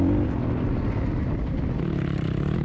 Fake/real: real